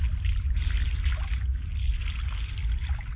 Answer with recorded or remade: recorded